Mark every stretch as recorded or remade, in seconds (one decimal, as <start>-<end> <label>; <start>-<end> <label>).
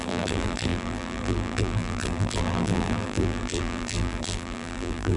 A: 0.0-5.2 remade